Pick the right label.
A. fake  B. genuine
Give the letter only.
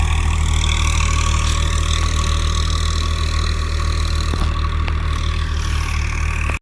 B